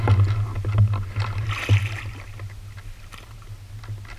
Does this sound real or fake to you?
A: real